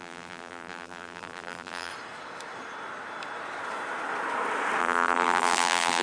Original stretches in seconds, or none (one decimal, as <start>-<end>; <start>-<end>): 1.9-4.8